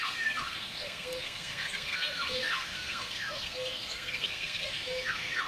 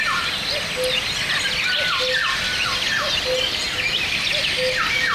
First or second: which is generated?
first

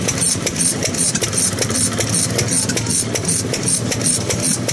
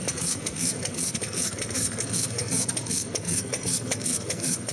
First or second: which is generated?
second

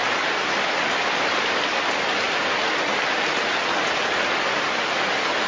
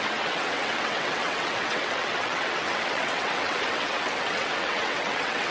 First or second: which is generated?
second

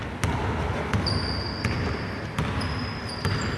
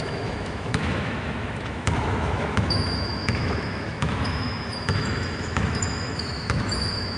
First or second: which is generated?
second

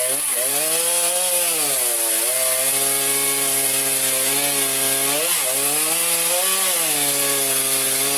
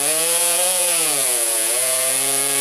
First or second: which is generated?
second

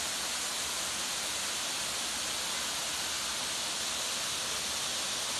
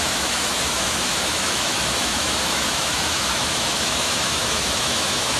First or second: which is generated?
second